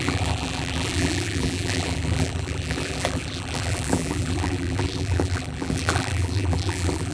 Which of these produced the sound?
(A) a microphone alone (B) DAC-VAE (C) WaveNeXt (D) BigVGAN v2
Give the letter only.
D